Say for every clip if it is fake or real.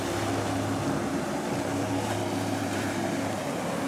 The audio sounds real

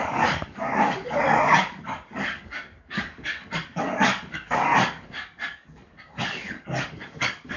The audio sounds fake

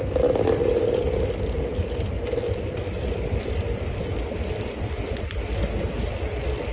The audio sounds real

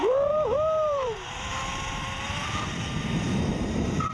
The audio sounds fake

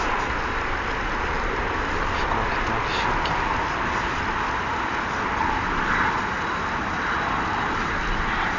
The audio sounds real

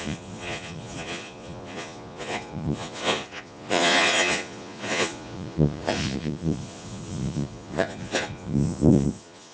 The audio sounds fake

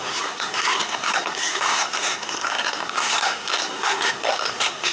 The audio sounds fake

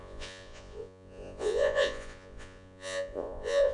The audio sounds fake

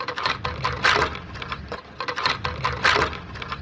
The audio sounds real